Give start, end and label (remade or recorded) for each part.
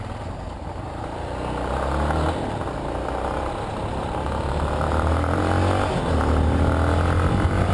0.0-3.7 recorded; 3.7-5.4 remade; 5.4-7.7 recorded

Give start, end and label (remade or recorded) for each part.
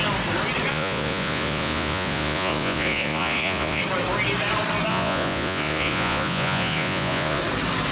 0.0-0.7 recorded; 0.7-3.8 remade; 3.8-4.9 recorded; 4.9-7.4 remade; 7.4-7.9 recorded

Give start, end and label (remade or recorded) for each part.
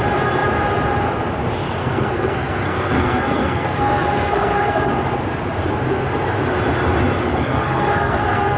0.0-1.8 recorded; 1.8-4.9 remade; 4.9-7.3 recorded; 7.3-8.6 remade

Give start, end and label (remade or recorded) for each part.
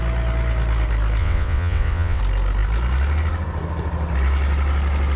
0.0-1.2 recorded; 1.2-2.2 remade; 2.2-5.2 recorded